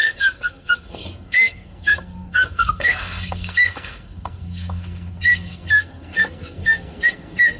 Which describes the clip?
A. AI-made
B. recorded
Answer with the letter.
A